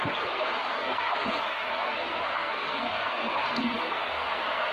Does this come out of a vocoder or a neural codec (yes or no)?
yes